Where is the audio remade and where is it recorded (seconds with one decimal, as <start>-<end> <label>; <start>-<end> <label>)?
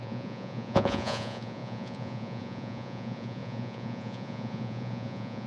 0.0-5.5 remade